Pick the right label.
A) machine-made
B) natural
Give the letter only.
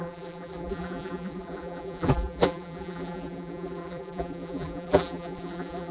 A